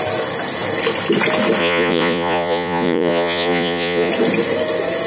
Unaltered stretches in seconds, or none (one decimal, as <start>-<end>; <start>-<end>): 0.0-1.6; 4.1-5.1